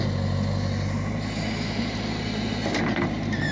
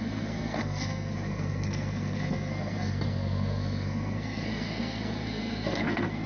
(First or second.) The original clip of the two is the first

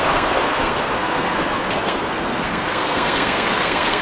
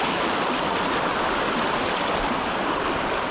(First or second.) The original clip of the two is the second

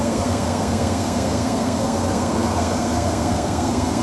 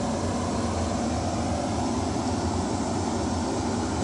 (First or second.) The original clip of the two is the second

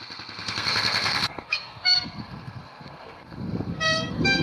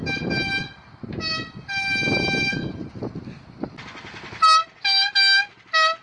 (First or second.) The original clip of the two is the second